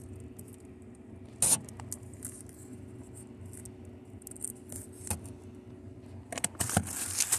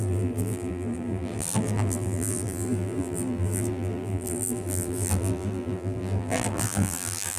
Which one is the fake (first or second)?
second